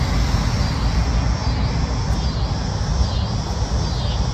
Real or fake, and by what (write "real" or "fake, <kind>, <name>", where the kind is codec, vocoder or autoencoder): real